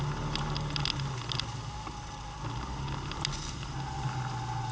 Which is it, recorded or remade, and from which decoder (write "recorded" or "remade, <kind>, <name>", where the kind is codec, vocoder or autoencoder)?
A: recorded